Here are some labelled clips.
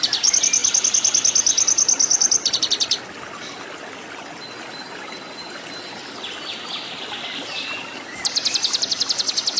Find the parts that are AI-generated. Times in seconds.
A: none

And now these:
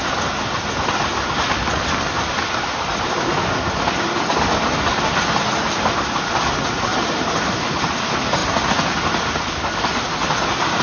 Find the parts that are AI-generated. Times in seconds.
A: 6.9-7.7 (vocoder, BigVGAN v2)

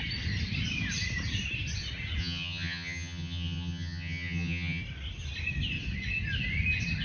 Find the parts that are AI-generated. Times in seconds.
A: 2.2-4.8 (vocoder, HiFi-GAN)